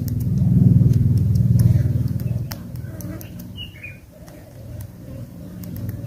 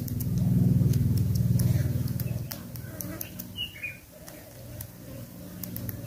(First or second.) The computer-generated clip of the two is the first